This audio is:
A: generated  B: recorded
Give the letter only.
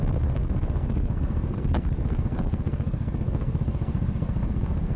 A